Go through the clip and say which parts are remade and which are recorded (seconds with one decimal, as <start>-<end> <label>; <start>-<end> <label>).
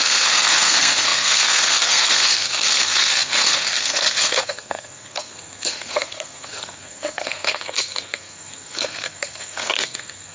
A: 0.0-10.3 remade